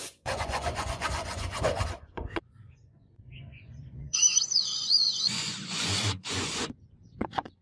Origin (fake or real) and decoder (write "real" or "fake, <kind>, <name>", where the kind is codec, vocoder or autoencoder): fake, vocoder, Vocos